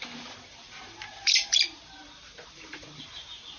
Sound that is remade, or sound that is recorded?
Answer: remade